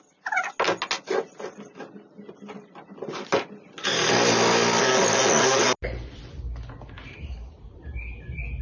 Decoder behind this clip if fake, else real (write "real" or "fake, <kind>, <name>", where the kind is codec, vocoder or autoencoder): real